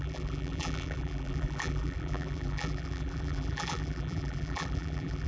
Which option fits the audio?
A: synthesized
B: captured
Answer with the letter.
A